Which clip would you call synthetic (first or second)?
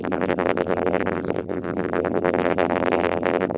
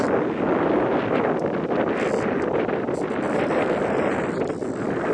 first